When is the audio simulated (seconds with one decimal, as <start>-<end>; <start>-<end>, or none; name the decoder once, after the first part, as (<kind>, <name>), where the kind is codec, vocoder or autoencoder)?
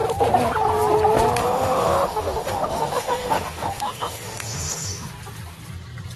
1.4-5.1 (autoencoder, DAC-VAE)